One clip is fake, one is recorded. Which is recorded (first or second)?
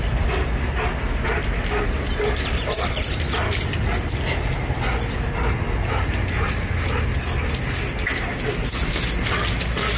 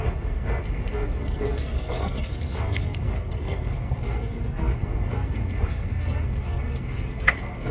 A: first